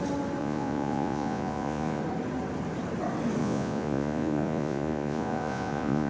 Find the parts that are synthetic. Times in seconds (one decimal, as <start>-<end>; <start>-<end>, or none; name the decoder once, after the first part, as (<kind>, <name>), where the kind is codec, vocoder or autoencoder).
0.4-2.0 (vocoder, Vocos); 3.4-6.1